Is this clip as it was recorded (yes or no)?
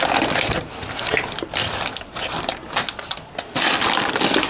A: yes